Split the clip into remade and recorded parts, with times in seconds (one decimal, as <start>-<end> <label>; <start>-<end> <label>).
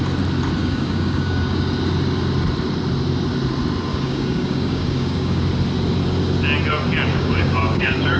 0.0-0.6 recorded; 0.6-1.6 remade; 1.6-3.9 recorded; 3.9-5.4 remade; 5.4-7.1 recorded; 7.1-8.2 remade